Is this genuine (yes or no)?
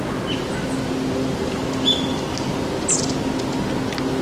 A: yes